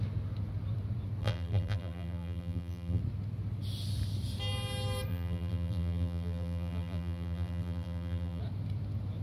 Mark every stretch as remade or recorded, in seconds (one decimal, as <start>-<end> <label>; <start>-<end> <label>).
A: 0.0-1.2 recorded; 1.2-3.0 remade; 3.0-5.1 recorded; 5.1-8.4 remade; 8.4-9.2 recorded